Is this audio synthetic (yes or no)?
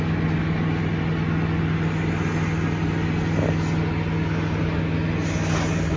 no